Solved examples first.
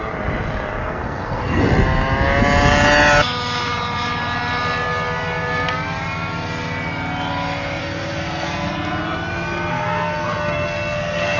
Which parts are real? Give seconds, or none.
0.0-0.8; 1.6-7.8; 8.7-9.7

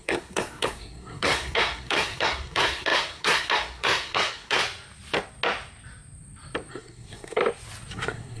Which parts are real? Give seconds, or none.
4.6-6.7; 7.4-7.9

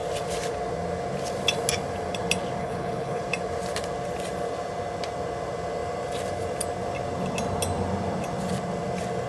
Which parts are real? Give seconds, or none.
0.0-2.6; 3.2-9.3

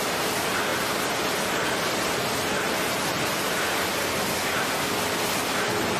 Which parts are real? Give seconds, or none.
0.0-6.0

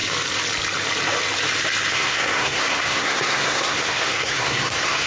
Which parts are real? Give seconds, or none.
0.0-1.9